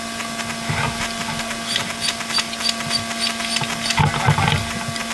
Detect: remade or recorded recorded